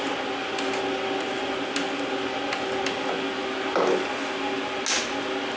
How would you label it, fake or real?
real